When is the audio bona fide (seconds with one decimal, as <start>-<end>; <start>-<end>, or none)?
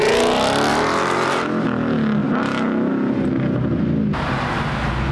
0.0-0.7; 1.4-5.1